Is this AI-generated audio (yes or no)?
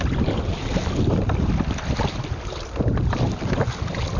no